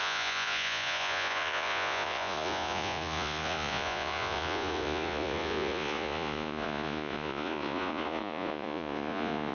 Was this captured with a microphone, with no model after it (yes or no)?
no